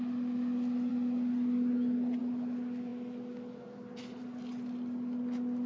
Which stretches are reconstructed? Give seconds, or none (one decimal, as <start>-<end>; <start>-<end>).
none